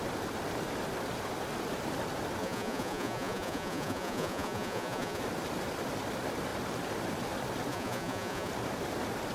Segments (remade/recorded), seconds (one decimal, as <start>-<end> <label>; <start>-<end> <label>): 0.0-2.4 recorded; 2.4-5.2 remade; 5.2-7.7 recorded; 7.7-8.5 remade; 8.5-9.3 recorded